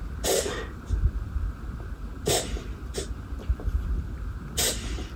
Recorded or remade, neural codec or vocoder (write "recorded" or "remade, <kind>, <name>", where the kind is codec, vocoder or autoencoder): recorded